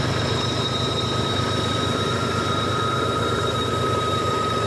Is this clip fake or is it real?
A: fake